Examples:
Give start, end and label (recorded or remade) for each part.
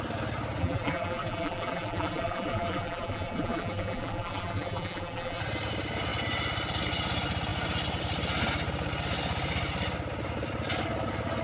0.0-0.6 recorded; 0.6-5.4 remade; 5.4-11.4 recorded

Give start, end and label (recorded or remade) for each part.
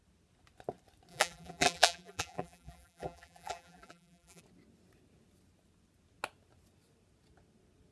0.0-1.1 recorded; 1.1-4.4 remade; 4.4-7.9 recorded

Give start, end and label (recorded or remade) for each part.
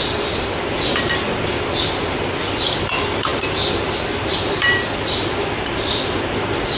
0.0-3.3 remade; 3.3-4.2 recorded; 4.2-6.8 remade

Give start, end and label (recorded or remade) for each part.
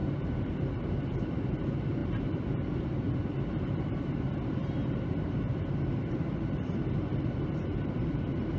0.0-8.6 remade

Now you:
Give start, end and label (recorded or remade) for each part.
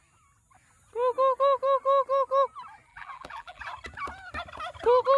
0.0-2.9 recorded; 2.9-3.6 remade; 3.6-5.2 recorded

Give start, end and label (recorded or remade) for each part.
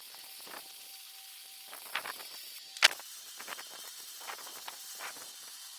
0.0-3.2 recorded; 3.2-5.1 remade; 5.1-5.8 recorded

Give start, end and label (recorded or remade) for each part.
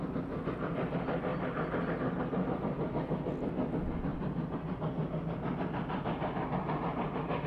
0.0-4.1 recorded; 4.1-4.7 remade; 4.7-7.5 recorded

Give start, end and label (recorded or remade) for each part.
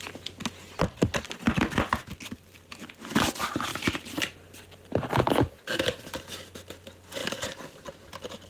0.0-2.0 recorded; 2.0-3.3 remade; 3.3-3.7 recorded; 3.7-5.6 remade; 5.6-8.5 recorded